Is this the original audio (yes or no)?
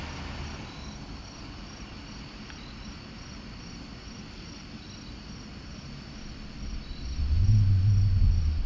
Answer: yes